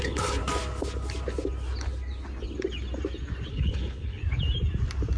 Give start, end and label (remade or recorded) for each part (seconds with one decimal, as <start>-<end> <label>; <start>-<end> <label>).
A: 0.0-0.4 remade; 0.4-3.5 recorded; 3.5-4.2 remade; 4.2-5.2 recorded